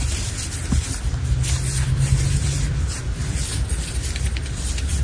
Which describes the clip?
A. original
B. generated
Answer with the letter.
A